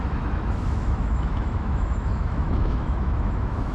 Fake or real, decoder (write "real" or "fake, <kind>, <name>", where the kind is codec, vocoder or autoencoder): fake, autoencoder, DAC-VAE